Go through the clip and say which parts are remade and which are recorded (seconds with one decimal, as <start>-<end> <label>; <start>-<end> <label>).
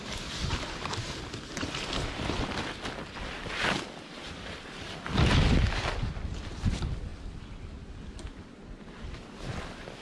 0.0-10.0 recorded